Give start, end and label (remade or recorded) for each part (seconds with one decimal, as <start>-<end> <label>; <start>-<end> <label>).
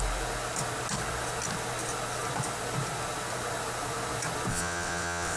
0.0-4.5 recorded; 4.5-5.4 remade